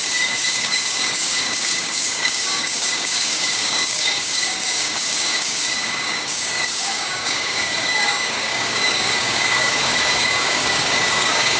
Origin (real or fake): fake